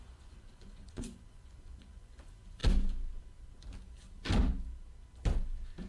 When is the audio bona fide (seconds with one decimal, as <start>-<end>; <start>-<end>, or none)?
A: 2.6-5.9